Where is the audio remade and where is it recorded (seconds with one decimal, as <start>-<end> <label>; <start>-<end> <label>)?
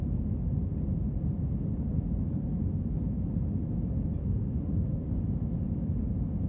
0.0-4.2 recorded; 4.2-5.1 remade; 5.1-6.5 recorded